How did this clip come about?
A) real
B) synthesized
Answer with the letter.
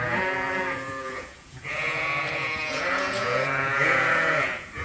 B